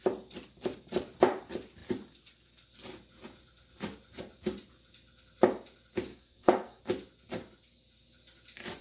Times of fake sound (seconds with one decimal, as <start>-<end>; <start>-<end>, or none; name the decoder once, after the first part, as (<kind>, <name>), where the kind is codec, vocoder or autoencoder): 6.1-6.8 (codec, SNAC)